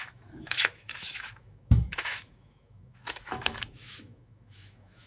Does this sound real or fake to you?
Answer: fake